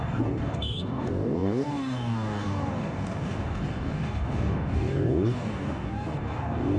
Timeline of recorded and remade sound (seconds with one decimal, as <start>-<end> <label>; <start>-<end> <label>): 0.0-6.8 remade